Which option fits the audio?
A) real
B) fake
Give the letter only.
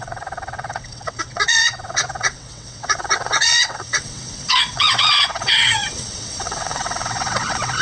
B